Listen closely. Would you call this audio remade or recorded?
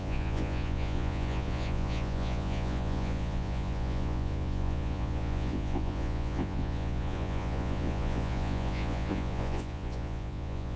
remade